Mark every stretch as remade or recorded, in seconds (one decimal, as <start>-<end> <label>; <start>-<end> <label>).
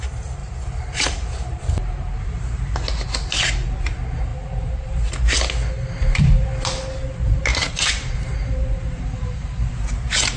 0.0-0.4 recorded; 0.4-2.7 remade; 2.7-4.3 recorded; 4.3-5.1 remade; 5.1-7.5 recorded; 7.5-9.7 remade; 9.7-10.4 recorded